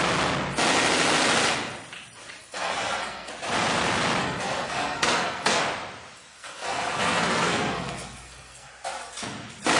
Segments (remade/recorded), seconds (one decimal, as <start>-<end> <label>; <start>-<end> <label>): 0.0-2.4 recorded; 2.4-3.3 remade; 3.3-4.2 recorded; 4.2-5.6 remade; 5.6-6.3 recorded; 6.3-8.7 remade; 8.7-9.8 recorded